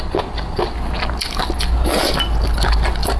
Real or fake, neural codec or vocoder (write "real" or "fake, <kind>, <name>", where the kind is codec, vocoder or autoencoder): real